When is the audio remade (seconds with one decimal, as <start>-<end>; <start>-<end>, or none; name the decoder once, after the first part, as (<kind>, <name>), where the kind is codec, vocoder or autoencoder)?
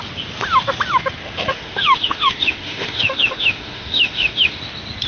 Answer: 1.5-4.6 (autoencoder, DAC-VAE)